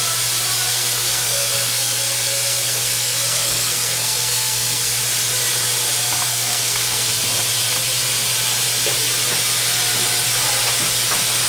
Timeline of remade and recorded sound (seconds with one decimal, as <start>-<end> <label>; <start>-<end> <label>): 0.0-0.7 recorded; 0.7-5.0 remade; 5.0-6.3 recorded; 6.3-7.1 remade; 7.1-11.5 recorded